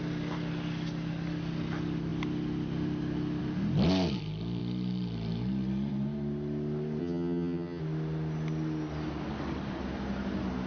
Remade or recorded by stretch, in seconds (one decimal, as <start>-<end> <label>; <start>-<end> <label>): 0.0-7.0 recorded; 7.0-7.8 remade; 7.8-10.7 recorded